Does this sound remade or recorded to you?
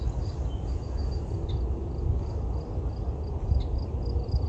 recorded